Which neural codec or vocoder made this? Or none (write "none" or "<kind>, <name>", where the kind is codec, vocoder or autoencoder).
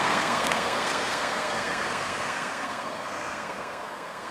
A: codec, SNAC